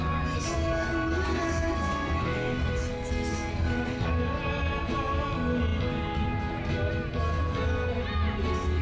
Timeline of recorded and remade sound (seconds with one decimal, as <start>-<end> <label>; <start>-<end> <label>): 0.0-1.5 recorded; 1.5-4.1 remade; 4.1-8.8 recorded